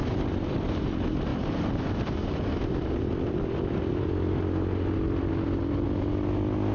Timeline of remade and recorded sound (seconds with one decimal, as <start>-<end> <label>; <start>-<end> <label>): 0.0-0.8 remade; 0.8-1.3 recorded; 1.3-5.3 remade; 5.3-6.7 recorded